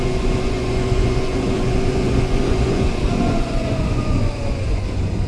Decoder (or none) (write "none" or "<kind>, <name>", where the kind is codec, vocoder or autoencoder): vocoder, Vocos